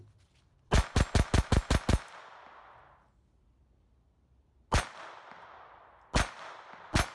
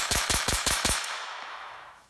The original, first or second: first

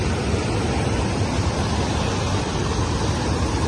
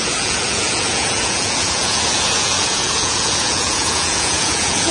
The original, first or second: first